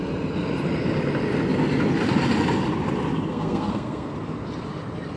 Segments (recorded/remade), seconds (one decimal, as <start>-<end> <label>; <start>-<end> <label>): 0.0-3.3 recorded; 3.3-4.1 remade; 4.1-5.2 recorded